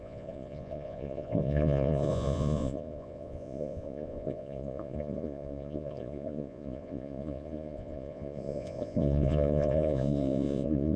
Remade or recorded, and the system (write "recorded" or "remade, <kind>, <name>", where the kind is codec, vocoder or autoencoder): remade, vocoder, Vocos